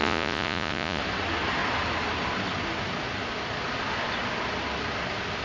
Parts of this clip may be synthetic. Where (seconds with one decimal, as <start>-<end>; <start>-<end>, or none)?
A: 0.0-1.0